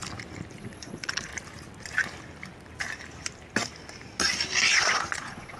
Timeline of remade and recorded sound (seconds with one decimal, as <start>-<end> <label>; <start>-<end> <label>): 0.0-0.6 recorded; 0.6-1.3 remade; 1.3-4.7 recorded; 4.7-5.6 remade